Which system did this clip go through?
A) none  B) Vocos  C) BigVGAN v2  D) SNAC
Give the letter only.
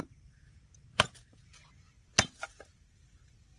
C